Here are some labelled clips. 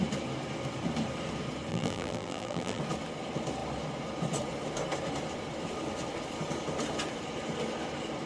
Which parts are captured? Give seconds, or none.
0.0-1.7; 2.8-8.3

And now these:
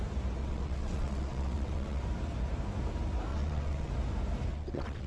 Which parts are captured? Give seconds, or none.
0.0-0.4; 2.0-3.3; 3.9-4.5

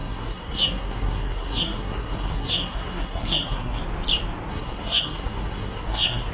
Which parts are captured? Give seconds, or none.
3.8-4.5

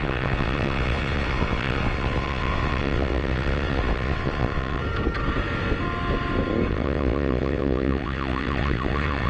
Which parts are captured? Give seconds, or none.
4.8-6.7

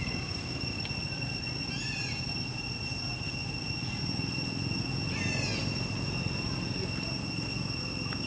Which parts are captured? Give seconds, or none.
0.8-8.3

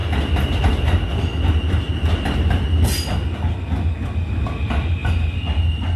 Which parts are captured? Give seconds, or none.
0.0-6.0